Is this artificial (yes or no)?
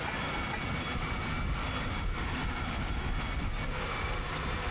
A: no